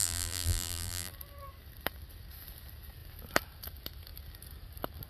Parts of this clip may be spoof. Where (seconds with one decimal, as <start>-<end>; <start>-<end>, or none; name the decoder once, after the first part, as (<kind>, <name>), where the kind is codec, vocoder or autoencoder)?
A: 0.0-1.1 (vocoder, BigVGAN v2)